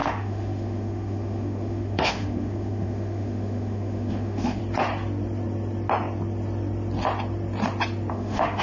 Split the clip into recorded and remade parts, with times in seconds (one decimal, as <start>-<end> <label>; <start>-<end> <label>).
0.0-4.6 remade; 4.6-8.1 recorded; 8.1-8.6 remade